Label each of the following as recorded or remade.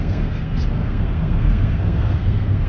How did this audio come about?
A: remade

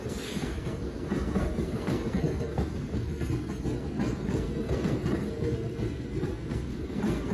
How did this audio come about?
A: remade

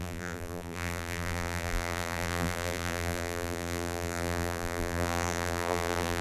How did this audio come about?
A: remade